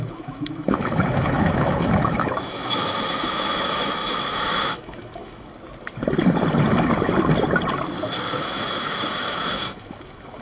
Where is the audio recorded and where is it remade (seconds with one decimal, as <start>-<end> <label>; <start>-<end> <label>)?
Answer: 0.0-5.5 remade; 5.5-8.4 recorded; 8.4-10.4 remade